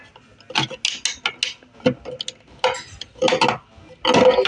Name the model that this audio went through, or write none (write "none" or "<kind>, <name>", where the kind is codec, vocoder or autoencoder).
none